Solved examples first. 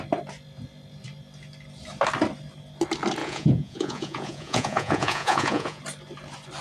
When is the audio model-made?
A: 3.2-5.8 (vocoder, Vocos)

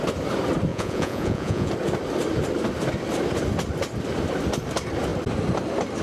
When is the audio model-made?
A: 0.7-1.7 (vocoder, Vocos)